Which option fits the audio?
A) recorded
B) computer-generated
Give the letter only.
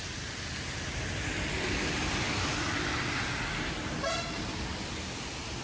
A